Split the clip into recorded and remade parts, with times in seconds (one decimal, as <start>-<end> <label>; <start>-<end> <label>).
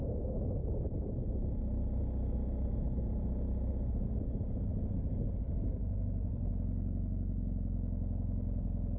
0.0-0.6 recorded; 0.6-2.0 remade; 2.0-4.7 recorded; 4.7-6.5 remade; 6.5-9.0 recorded